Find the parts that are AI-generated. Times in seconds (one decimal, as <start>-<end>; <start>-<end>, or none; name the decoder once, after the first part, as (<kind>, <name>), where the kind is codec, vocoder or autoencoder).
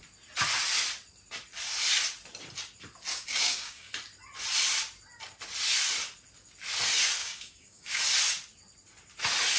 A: 3.1-3.9 (codec, DAC); 7.2-8.0